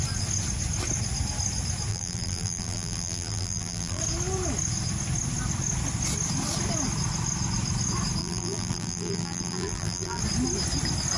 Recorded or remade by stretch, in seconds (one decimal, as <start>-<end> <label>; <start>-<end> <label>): 0.0-1.9 recorded; 1.9-4.0 remade; 4.0-8.2 recorded; 8.2-10.2 remade; 10.2-11.2 recorded